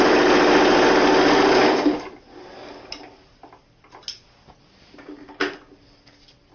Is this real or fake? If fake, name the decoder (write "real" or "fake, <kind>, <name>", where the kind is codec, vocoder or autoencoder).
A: real